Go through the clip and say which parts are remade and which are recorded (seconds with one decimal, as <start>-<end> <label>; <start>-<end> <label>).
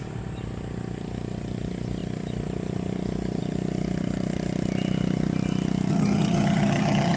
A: 0.0-5.9 recorded; 5.9-7.2 remade